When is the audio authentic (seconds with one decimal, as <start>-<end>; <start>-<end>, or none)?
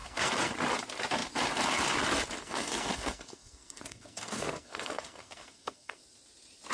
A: 0.5-2.4; 6.0-6.7